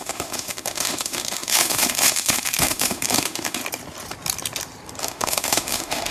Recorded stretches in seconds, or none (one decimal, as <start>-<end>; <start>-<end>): 3.6-5.0